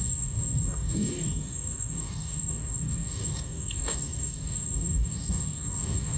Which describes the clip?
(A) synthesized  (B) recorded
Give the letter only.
A